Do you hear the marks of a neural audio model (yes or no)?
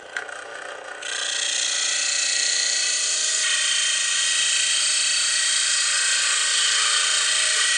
no